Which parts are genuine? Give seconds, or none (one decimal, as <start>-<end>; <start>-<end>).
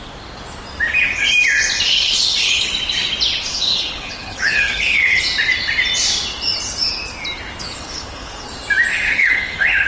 0.0-1.9; 2.7-3.5; 5.2-7.6; 8.3-8.9